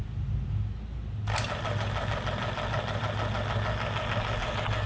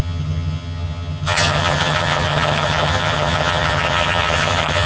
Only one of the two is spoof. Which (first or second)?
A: second